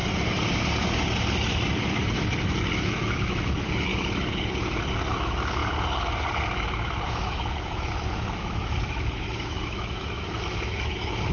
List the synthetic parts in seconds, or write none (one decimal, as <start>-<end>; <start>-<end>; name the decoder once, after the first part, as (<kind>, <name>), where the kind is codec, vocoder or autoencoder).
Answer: 2.7-3.9 (autoencoder, DAC-VAE); 5.1-5.6; 7.1-11.3